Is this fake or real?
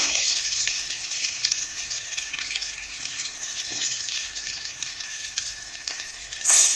fake